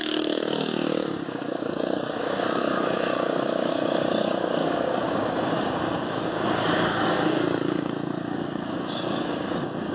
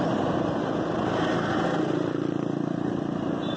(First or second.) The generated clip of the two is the first